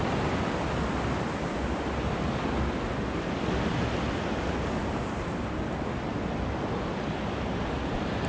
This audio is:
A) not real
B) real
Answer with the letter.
B